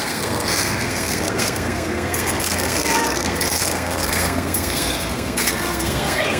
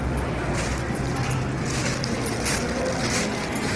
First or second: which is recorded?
second